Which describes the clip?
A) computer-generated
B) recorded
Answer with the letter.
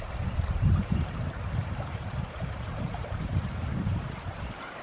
A